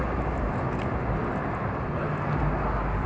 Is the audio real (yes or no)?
yes